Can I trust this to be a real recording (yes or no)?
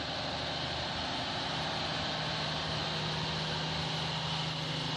yes